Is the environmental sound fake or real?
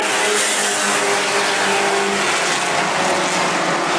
real